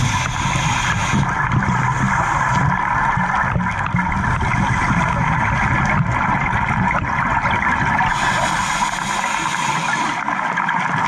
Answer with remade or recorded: recorded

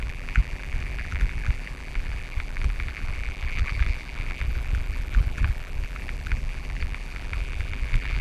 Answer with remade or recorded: remade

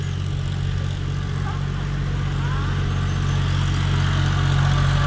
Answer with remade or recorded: recorded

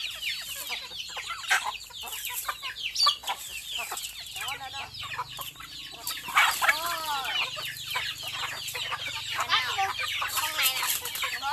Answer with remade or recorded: recorded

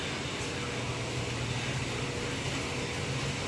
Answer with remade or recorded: recorded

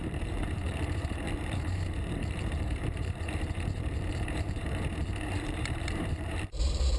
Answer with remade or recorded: remade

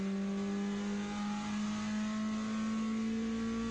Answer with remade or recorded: recorded